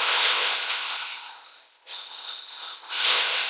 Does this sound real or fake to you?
fake